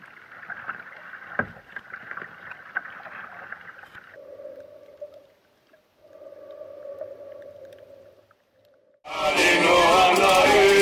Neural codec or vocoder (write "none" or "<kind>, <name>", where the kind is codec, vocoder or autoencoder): none